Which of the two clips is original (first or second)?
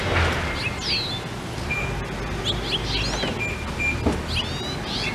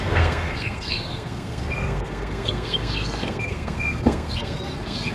first